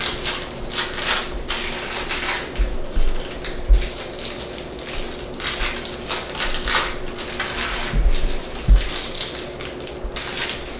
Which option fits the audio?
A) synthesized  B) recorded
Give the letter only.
B